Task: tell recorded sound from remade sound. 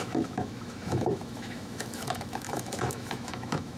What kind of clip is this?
remade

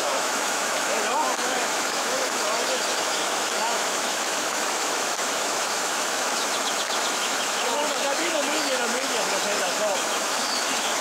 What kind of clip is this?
remade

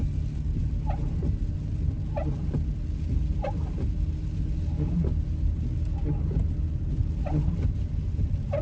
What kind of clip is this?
recorded